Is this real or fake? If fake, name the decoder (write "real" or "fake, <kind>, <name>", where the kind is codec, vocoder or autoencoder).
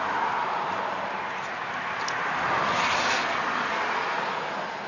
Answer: real